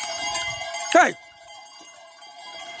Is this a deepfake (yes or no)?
yes